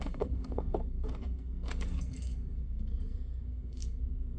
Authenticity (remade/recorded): remade